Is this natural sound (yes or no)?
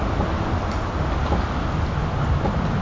yes